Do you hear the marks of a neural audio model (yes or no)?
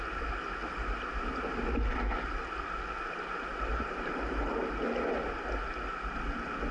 no